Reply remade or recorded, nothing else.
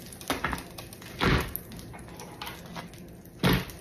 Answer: recorded